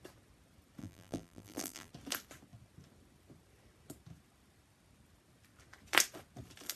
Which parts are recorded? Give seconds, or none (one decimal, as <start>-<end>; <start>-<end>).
0.0-0.8; 1.9-6.8